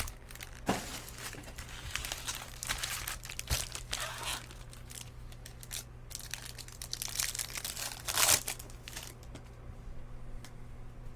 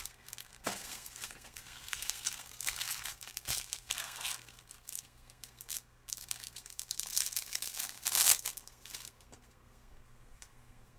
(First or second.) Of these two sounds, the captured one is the first